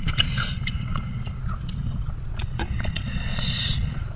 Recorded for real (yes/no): no